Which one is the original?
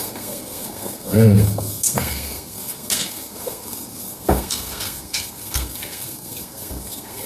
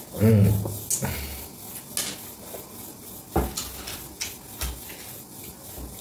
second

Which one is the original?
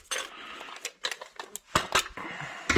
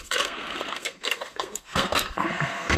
first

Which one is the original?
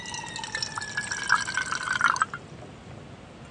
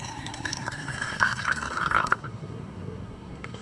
first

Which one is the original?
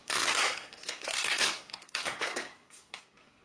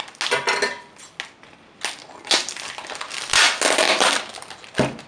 second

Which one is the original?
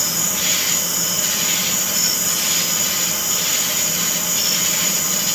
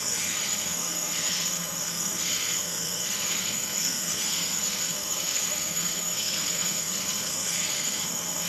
first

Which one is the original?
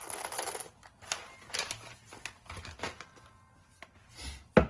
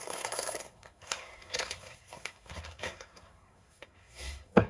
first